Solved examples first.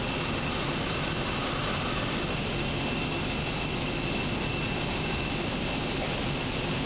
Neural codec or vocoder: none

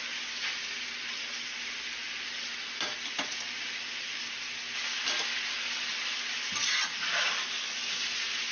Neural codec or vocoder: none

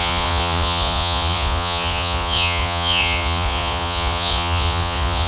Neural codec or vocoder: vocoder, Vocos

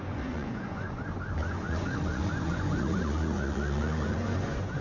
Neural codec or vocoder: vocoder, Vocos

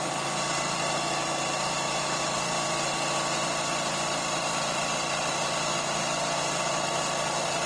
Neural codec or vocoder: none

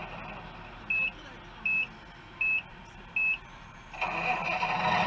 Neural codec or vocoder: none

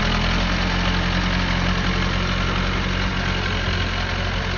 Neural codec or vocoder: none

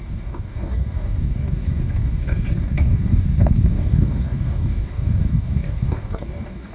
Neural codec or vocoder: codec, DAC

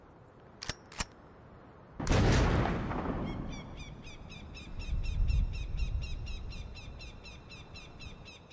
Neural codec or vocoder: none